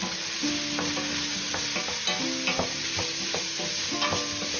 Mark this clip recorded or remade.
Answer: recorded